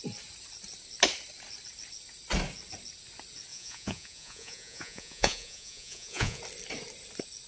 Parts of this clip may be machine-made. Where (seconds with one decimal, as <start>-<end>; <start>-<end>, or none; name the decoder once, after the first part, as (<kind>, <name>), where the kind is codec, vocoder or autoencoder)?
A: 3.5-6.4 (vocoder, Vocos)